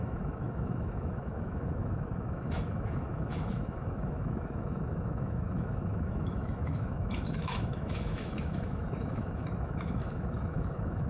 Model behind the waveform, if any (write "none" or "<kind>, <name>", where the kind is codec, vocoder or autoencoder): autoencoder, DAC-VAE